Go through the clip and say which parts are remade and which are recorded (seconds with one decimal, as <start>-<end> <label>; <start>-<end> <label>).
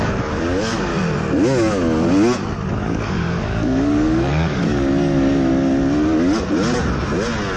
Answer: 0.0-0.9 remade; 0.9-2.8 recorded; 2.8-5.5 remade; 5.5-7.6 recorded